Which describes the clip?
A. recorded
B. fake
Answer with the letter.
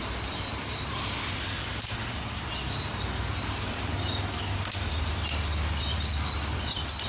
A